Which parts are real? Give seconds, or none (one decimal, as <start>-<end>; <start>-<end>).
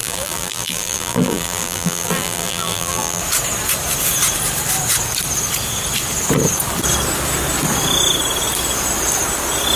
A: 3.2-9.8